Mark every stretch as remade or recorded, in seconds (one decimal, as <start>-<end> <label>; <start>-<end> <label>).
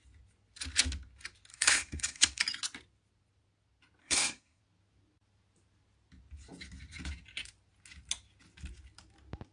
0.0-1.5 recorded; 1.5-2.4 remade; 2.4-4.0 recorded; 4.0-4.6 remade; 4.6-9.5 recorded